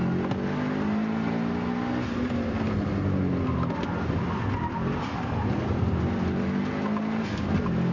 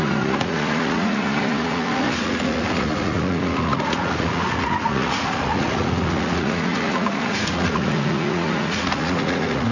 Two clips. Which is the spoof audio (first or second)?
second